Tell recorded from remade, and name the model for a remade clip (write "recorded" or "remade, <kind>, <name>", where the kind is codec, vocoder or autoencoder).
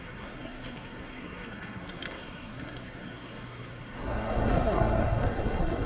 remade, codec, SNAC